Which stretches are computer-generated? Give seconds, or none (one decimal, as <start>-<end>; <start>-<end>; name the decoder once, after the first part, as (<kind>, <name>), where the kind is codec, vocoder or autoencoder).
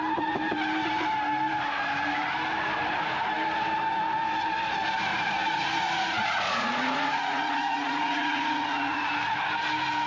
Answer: 5.1-9.1 (vocoder, Vocos)